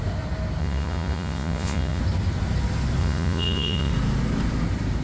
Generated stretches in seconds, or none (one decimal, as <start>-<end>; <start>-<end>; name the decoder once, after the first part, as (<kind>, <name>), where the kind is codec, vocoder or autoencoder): 0.6-2.0 (vocoder, Vocos); 3.0-3.9